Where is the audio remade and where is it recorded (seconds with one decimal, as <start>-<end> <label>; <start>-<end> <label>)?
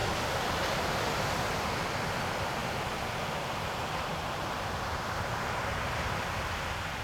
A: 0.0-2.6 recorded; 2.6-6.1 remade; 6.1-7.0 recorded